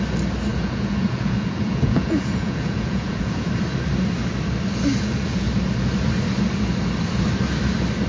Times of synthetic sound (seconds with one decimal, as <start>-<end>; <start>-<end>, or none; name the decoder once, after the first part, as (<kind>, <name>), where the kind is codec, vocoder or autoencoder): 0.5-3.5 (vocoder, Vocos); 4.9-5.5